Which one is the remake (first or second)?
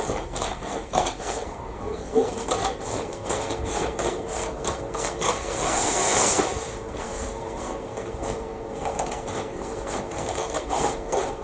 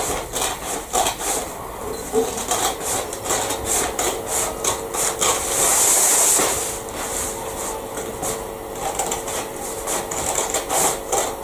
first